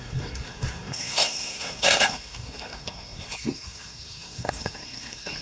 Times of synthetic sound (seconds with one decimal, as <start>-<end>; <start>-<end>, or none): 0.0-5.4